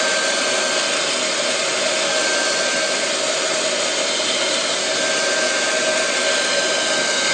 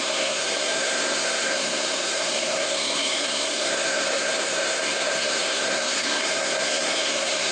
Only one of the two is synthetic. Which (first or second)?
second